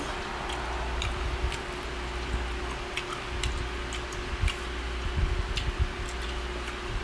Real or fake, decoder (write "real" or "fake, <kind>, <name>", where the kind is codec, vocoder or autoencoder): real